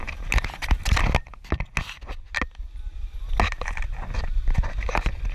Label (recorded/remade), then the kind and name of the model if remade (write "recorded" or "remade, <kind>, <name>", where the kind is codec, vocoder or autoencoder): recorded